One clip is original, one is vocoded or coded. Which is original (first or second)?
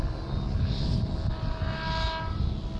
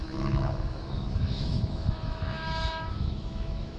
first